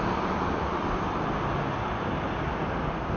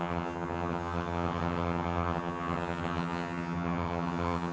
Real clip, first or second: first